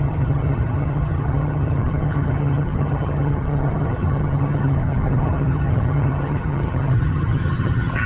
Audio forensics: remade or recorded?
remade